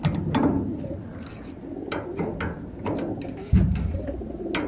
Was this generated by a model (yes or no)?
no